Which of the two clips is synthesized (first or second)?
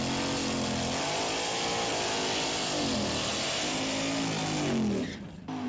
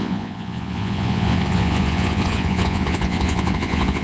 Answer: second